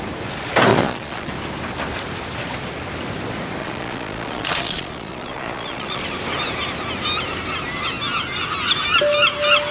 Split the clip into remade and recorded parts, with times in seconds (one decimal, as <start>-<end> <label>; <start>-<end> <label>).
0.0-0.7 recorded; 0.7-1.3 remade; 1.3-3.6 recorded; 3.6-6.0 remade; 6.0-9.7 recorded